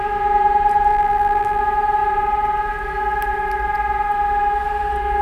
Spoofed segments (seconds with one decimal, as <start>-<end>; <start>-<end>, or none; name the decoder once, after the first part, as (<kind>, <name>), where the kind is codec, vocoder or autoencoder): 0.9-1.6 (vocoder, BigVGAN v2)